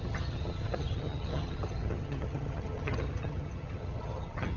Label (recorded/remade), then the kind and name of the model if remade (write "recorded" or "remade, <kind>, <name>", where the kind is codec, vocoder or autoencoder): remade, vocoder, HiFi-GAN